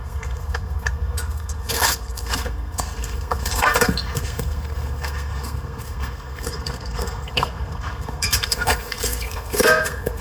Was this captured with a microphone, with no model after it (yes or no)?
no